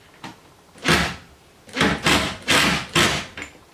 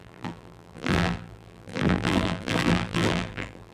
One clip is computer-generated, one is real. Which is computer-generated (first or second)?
second